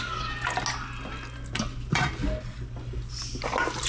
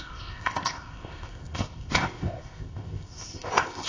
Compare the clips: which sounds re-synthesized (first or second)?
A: second